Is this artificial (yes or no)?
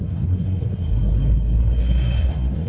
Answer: yes